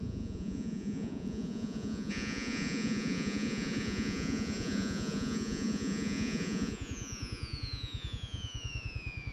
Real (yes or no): no